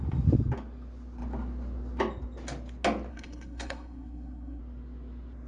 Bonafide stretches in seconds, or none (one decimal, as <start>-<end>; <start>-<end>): 0.0-3.1; 4.6-5.5